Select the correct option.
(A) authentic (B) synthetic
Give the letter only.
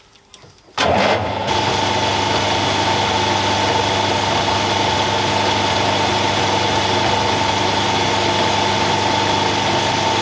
A